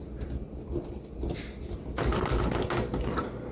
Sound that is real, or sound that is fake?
real